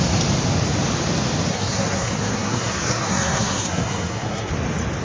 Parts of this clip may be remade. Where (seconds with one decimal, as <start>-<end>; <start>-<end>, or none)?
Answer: 1.5-4.5